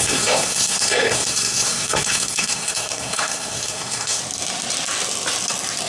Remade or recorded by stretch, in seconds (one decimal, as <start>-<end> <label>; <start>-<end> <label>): 0.0-4.2 remade; 4.2-5.9 recorded